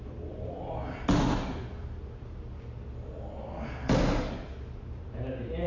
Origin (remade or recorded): recorded